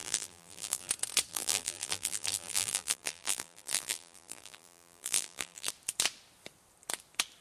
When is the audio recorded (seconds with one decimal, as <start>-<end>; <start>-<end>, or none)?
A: 0.9-1.3; 5.7-7.4